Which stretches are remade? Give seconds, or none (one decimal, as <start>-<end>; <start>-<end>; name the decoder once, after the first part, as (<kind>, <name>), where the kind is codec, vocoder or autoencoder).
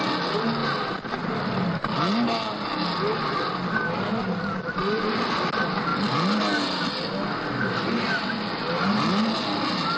none